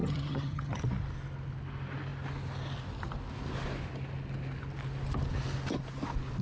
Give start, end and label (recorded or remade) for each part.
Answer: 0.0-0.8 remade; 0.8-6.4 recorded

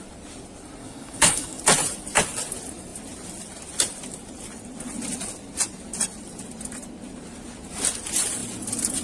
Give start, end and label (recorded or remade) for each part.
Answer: 0.0-0.8 recorded; 0.8-1.6 remade; 1.6-9.0 recorded

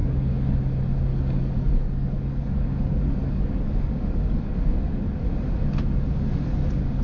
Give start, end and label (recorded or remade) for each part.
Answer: 0.0-0.6 remade; 0.6-1.1 recorded; 1.1-5.3 remade; 5.3-7.0 recorded

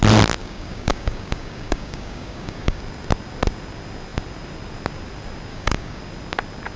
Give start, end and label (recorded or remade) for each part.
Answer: 0.0-0.4 recorded; 0.4-2.8 remade; 2.8-5.5 recorded; 5.5-6.0 remade; 6.0-6.8 recorded

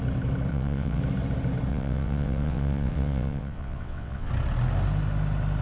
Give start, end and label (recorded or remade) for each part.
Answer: 0.0-0.5 recorded; 0.5-1.0 remade; 1.0-1.7 recorded; 1.7-4.3 remade; 4.3-5.6 recorded

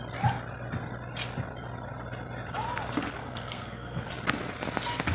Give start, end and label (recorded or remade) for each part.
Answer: 0.0-3.2 recorded; 3.2-4.1 remade; 4.1-5.1 recorded

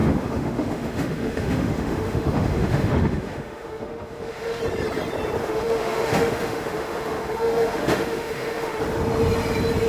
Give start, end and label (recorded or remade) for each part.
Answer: 0.0-4.6 remade; 4.6-5.4 recorded; 5.4-8.8 remade; 8.8-9.9 recorded